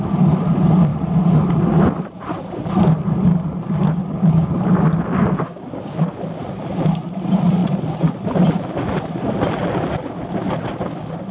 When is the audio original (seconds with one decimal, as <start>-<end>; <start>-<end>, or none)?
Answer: 0.0-4.0; 4.5-5.2; 6.2-11.3